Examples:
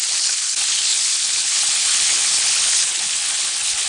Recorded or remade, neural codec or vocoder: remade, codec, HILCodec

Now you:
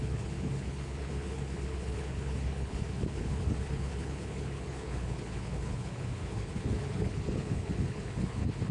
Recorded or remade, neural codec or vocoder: remade, codec, HILCodec